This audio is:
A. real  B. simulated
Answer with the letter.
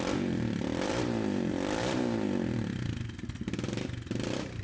B